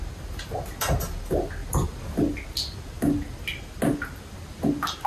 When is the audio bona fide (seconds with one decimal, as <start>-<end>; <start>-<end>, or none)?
0.0-5.1